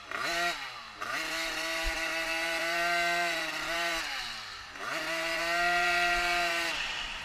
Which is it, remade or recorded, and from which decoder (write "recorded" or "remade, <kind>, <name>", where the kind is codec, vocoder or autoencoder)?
remade, vocoder, BigVGAN v2